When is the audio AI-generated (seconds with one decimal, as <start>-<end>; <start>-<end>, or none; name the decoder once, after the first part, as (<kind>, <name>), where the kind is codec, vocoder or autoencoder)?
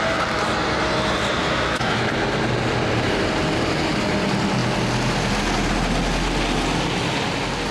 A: 1.4-2.1 (autoencoder, DAC-VAE)